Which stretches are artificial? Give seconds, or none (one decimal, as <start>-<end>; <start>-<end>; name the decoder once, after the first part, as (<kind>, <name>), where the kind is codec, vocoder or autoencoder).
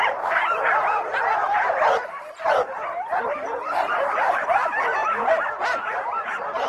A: 0.0-1.3 (vocoder, BigVGAN v2); 3.2-6.7